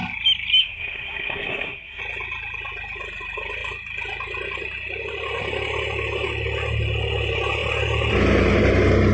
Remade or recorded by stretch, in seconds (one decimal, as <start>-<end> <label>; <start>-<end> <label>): 0.0-0.6 recorded; 0.6-2.0 remade; 2.0-9.1 recorded